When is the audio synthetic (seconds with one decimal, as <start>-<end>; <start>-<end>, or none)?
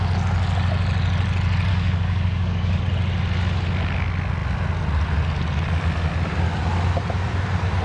1.7-2.8